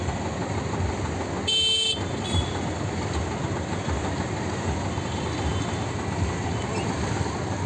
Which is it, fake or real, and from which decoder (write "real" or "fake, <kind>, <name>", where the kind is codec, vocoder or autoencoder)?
real